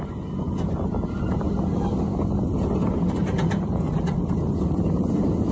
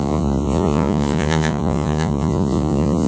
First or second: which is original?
first